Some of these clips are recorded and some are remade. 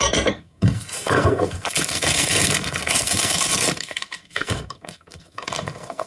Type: remade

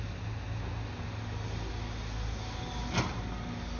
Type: recorded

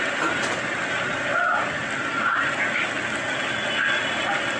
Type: recorded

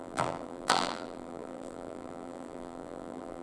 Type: remade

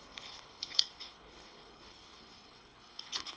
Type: remade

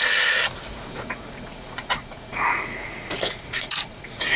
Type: remade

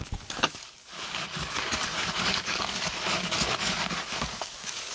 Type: remade